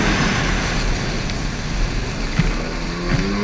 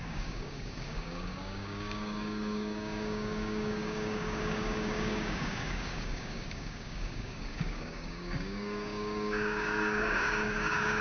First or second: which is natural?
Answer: first